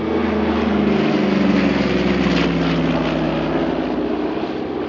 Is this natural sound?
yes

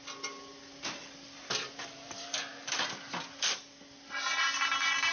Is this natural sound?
yes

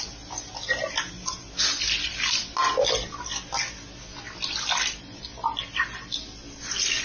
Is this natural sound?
yes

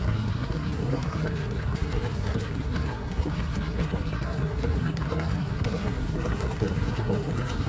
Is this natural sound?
no